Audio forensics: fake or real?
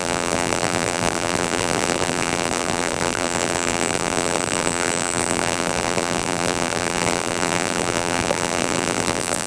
fake